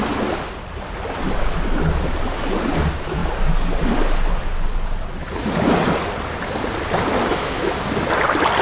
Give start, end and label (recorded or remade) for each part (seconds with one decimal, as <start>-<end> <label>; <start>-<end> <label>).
0.0-7.3 recorded; 7.3-7.8 remade; 7.8-8.6 recorded